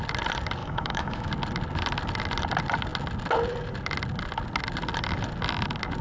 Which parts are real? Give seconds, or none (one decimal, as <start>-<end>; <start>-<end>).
0.0-0.6; 1.3-6.0